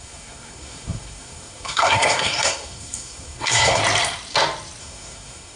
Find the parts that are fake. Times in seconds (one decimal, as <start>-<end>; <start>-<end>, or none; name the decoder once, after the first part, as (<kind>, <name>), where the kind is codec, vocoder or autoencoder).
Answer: 0.0-3.8 (codec, SNAC); 4.8-5.6